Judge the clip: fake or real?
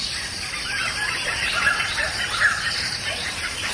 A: real